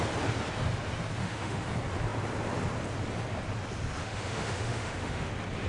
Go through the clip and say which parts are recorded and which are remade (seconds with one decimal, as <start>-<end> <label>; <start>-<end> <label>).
0.0-1.2 recorded; 1.2-1.7 remade; 1.7-4.0 recorded; 4.0-5.3 remade; 5.3-5.7 recorded